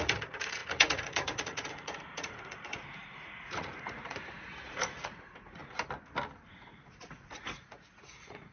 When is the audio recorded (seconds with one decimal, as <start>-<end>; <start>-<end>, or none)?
5.6-6.4